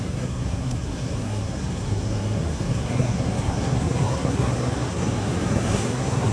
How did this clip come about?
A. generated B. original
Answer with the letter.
A